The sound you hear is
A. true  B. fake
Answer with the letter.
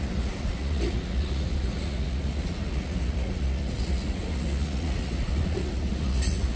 B